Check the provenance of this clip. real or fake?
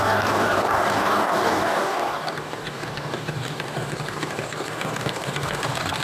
fake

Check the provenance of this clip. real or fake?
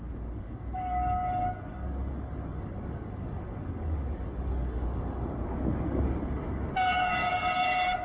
fake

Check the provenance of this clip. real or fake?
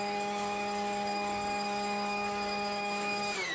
fake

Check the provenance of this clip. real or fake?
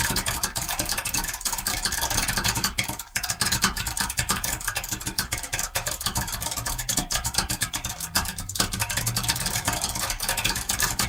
fake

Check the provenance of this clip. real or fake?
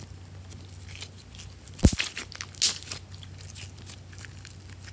real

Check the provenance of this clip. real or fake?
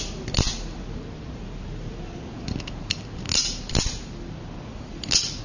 real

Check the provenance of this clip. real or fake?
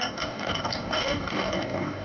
fake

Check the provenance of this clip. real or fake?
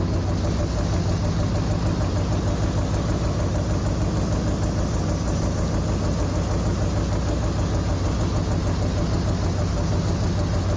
real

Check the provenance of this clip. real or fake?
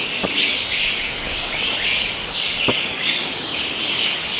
fake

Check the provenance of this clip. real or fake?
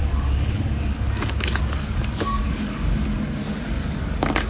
fake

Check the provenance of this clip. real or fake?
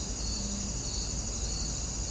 real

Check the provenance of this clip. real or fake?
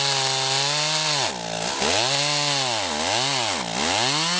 real